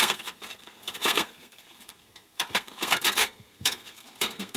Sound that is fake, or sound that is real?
fake